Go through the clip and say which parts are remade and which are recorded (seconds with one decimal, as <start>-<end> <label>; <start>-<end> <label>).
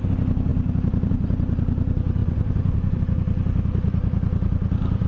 0.0-2.2 recorded; 2.2-3.0 remade; 3.0-5.1 recorded